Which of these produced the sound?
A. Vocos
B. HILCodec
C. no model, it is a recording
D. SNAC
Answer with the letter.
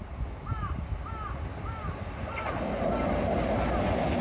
C